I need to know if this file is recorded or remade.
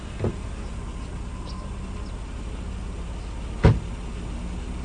recorded